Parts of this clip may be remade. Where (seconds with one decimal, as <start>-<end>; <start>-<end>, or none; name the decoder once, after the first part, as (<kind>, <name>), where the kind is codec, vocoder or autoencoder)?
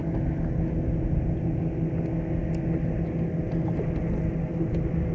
none